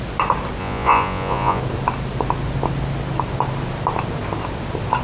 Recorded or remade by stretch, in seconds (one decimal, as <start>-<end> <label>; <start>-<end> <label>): 0.0-0.6 recorded; 0.6-1.6 remade; 1.6-5.0 recorded